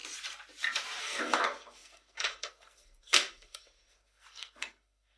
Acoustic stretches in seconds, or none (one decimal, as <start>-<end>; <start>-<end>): 0.0-1.0